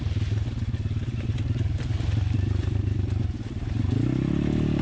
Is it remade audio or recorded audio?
recorded